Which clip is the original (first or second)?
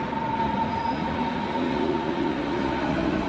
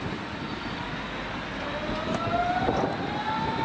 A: second